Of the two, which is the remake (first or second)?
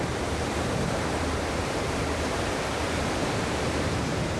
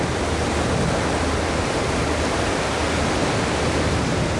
first